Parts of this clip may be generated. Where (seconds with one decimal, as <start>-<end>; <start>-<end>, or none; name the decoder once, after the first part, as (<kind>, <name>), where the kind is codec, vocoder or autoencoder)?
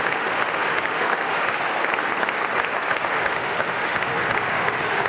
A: 0.0-1.9 (autoencoder, DAC-VAE); 2.9-5.1